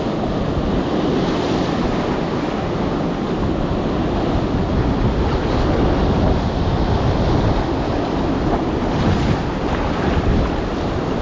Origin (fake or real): real